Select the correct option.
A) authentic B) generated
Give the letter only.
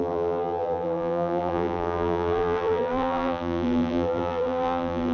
B